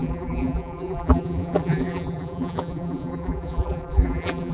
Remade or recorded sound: remade